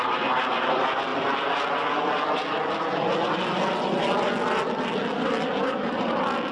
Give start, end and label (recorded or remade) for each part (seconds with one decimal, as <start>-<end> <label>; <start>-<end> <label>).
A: 0.0-6.5 recorded

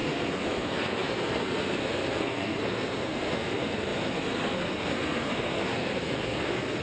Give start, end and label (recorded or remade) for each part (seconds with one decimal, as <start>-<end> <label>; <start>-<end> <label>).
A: 0.0-6.8 remade

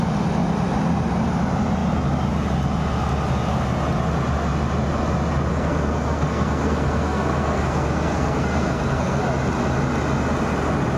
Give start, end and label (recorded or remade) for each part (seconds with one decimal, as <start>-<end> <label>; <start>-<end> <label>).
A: 0.0-5.5 recorded; 5.5-9.2 remade; 9.2-11.0 recorded

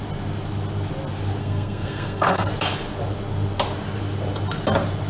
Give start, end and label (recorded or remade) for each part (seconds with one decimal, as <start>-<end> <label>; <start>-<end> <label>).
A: 0.0-1.4 recorded; 1.4-2.5 remade; 2.5-5.1 recorded

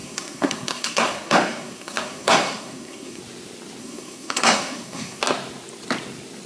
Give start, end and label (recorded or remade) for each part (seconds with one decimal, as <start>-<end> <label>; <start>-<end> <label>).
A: 0.0-3.2 remade; 3.2-3.8 recorded; 3.8-5.2 remade; 5.2-6.5 recorded

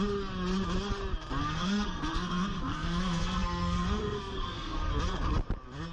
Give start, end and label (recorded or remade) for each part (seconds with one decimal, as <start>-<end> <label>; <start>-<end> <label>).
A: 0.0-1.4 recorded; 1.4-4.9 remade; 4.9-5.9 recorded